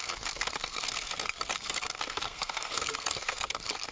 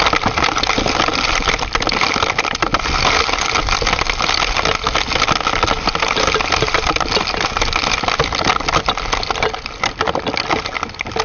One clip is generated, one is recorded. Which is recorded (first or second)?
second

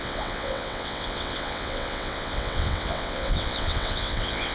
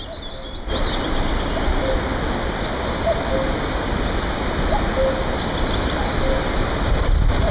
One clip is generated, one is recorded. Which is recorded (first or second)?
second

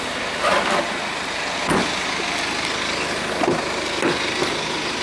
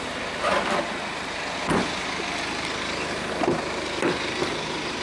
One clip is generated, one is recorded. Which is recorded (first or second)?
first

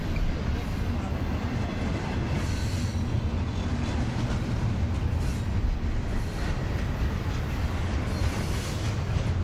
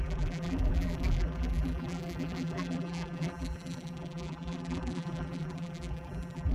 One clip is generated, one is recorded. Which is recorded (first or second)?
first